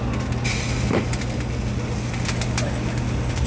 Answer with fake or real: real